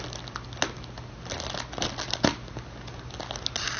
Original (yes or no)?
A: yes